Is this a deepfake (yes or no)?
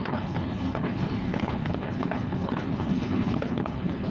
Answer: yes